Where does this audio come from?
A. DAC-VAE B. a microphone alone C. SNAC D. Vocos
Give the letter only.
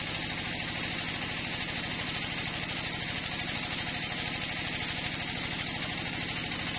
B